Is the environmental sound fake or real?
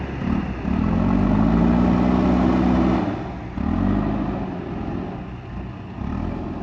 real